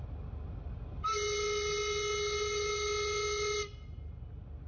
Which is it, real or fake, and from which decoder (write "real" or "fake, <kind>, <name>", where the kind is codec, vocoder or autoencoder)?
real